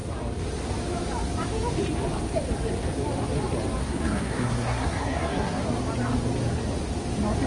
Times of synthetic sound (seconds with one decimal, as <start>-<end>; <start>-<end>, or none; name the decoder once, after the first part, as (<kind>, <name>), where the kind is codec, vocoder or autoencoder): 3.8-5.6 (codec, SNAC)